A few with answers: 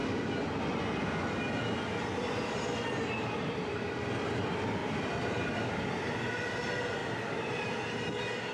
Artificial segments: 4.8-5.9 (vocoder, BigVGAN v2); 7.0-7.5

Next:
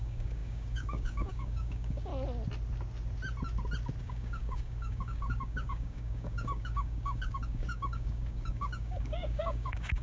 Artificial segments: 0.0-2.1 (codec, DAC); 4.0-10.0

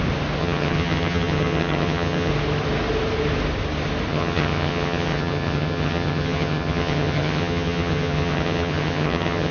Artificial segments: 0.4-2.3 (vocoder, HiFi-GAN); 4.1-9.5

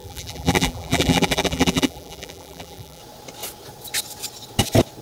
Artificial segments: 0.0-3.0 (vocoder, BigVGAN v2)

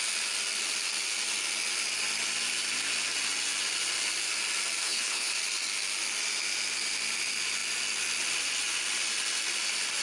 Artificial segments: 4.8-5.3 (codec, HILCodec)

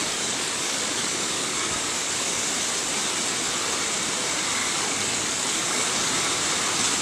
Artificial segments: 0.0-2.5 (codec, DAC); 4.6-6.1